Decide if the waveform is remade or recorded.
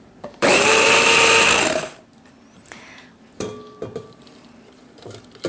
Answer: remade